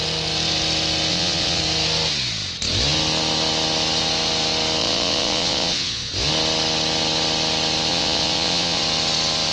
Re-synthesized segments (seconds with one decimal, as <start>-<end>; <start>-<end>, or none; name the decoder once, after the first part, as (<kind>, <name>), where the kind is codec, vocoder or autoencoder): 1.1-1.6 (vocoder, Vocos); 4.8-6.1; 7.9-8.8